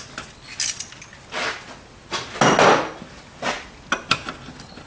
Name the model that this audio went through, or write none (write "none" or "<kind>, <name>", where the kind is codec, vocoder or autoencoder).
none